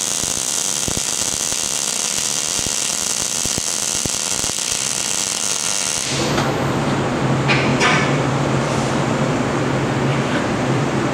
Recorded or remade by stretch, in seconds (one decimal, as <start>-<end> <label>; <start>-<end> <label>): 0.0-7.7 recorded; 7.7-9.6 remade; 9.6-10.1 recorded; 10.1-11.1 remade